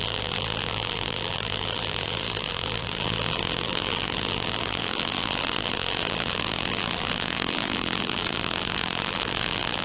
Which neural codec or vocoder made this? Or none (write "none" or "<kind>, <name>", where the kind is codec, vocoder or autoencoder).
vocoder, BigVGAN v2